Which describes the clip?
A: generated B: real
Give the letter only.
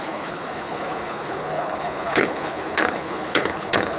A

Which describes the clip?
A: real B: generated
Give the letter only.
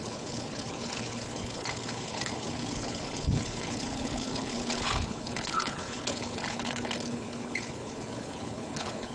B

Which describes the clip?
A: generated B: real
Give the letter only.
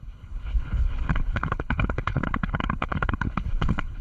A